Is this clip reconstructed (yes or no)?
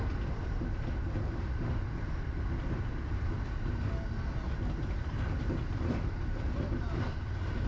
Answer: no